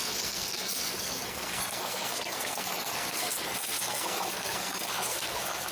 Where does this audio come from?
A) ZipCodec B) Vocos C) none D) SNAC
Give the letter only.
D